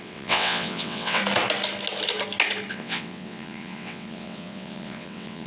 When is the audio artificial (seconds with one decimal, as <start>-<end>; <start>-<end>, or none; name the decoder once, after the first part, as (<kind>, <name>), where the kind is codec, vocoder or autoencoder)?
0.0-1.2 (vocoder, WaveNeXt); 2.7-5.5